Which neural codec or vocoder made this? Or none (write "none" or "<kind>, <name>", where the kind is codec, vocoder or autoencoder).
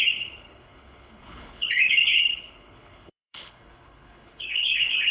codec, HILCodec